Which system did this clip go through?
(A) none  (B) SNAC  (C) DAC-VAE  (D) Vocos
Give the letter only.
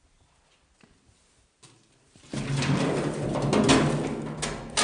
A